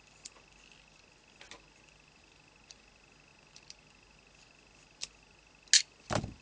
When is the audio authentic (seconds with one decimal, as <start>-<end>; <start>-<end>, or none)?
0.0-6.4